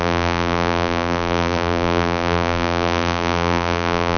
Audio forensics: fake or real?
fake